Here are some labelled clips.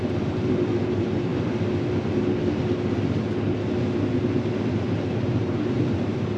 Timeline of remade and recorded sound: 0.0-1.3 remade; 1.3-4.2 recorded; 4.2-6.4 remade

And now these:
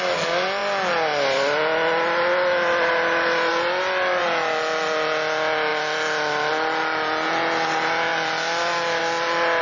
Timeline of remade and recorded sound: 0.0-9.6 recorded

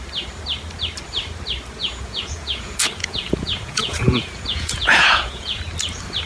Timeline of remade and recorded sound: 0.0-1.8 recorded; 1.8-5.6 remade; 5.6-6.3 recorded

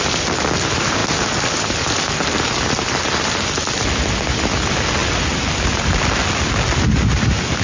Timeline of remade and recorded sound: 0.0-7.6 recorded

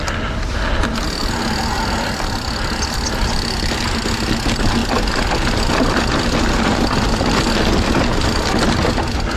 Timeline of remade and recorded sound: 0.0-9.4 recorded

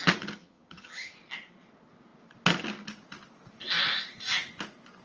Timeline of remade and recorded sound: 0.0-0.4 recorded; 0.4-1.1 remade; 1.1-5.0 recorded

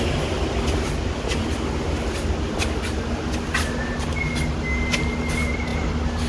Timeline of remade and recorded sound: 0.0-6.3 recorded